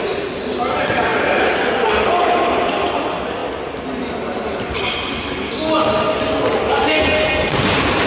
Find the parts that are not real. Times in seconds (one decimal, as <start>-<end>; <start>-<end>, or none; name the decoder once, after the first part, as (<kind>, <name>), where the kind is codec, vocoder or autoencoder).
none